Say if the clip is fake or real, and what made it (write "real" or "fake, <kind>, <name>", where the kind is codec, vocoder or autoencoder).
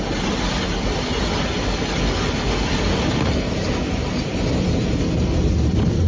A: real